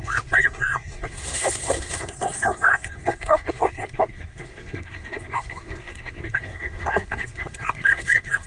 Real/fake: fake